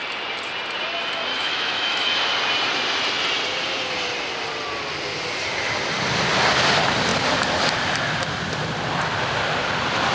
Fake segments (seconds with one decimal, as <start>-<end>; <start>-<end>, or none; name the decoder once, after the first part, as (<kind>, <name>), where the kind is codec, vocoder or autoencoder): 1.3-2.1 (autoencoder, DAC-VAE)